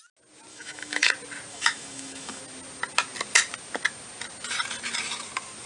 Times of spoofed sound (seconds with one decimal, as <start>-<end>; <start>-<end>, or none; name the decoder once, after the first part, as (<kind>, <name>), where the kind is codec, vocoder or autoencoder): 0.5-1.1 (autoencoder, DAC-VAE); 1.5-2.4